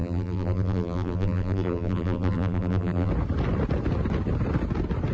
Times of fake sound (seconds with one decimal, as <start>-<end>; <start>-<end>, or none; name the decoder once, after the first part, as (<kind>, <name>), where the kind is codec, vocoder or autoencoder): 0.0-3.1 (vocoder, BigVGAN v2)